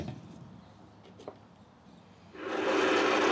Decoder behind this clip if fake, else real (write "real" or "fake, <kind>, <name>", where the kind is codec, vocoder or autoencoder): real